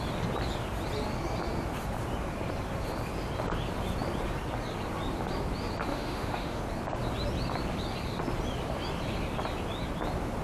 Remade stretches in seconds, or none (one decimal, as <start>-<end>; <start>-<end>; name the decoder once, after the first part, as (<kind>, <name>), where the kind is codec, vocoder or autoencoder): 5.9-6.6 (autoencoder, DAC-VAE)